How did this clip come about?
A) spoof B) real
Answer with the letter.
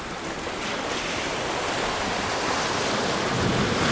B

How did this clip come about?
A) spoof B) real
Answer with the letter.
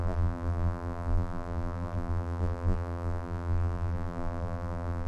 A